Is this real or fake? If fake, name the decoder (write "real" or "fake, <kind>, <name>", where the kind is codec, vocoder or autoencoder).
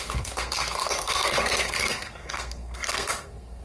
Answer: fake, codec, SNAC